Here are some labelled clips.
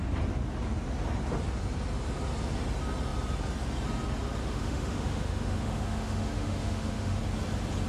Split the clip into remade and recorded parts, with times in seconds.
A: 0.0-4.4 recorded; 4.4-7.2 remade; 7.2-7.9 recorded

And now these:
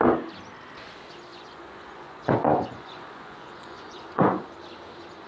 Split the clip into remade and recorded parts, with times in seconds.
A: 0.0-1.3 recorded; 1.3-4.5 remade; 4.5-5.3 recorded

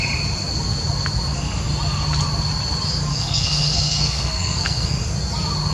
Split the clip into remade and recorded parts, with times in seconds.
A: 0.0-3.1 recorded; 3.1-5.1 remade; 5.1-5.7 recorded

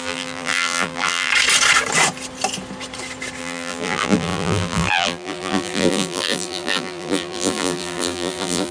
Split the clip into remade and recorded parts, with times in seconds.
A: 0.0-1.3 remade; 1.3-3.4 recorded; 3.4-8.7 remade

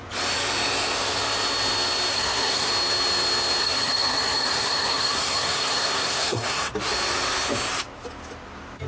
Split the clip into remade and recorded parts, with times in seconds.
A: 0.0-2.1 recorded; 2.1-2.7 remade; 2.7-3.6 recorded; 3.6-6.7 remade; 6.7-8.9 recorded

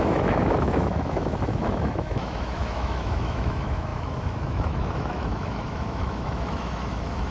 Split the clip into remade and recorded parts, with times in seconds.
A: 0.0-7.3 remade

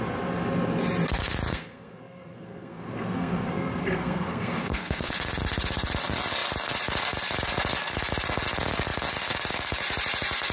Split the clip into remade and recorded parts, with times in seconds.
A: 0.0-1.5 recorded; 1.5-5.1 remade; 5.1-10.5 recorded